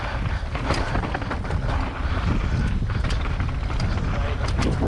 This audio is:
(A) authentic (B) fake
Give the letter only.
A